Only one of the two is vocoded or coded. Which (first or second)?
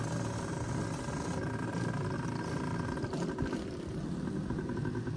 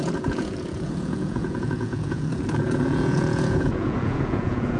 second